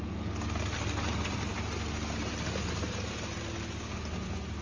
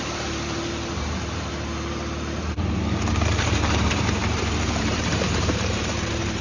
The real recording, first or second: first